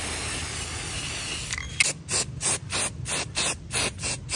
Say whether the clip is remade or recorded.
recorded